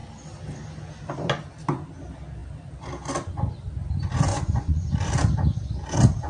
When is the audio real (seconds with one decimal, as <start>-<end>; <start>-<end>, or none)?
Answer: 0.0-4.3; 4.9-6.3